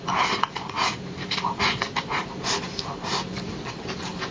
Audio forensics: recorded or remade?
recorded